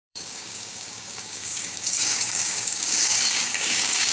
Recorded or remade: remade